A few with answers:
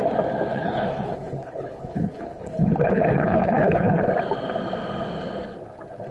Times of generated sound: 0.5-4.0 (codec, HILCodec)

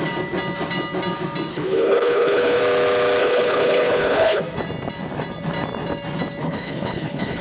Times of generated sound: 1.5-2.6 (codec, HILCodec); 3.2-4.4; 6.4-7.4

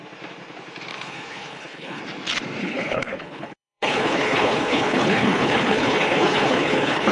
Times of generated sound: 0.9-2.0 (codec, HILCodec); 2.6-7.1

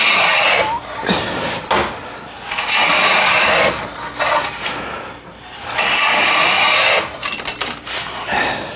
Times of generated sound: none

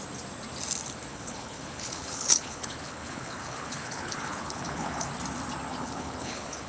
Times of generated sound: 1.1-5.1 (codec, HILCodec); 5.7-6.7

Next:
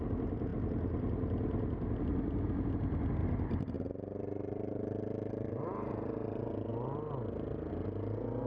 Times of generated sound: none

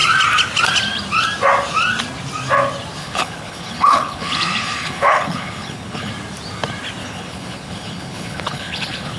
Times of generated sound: 3.0-6.1 (codec, HILCodec); 7.0-9.2

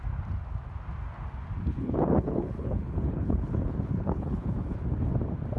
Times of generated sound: 1.7-5.1 (codec, HILCodec)